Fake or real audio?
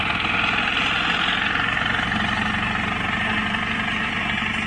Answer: real